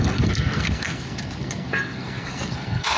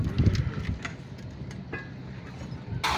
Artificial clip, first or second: first